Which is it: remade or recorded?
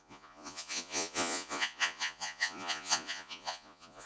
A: remade